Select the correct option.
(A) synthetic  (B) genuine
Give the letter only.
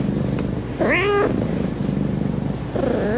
B